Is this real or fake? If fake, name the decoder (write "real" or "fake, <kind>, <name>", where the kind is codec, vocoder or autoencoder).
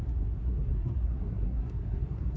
fake, codec, SNAC